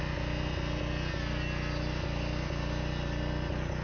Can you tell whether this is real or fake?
real